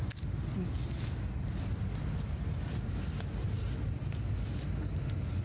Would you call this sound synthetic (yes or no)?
no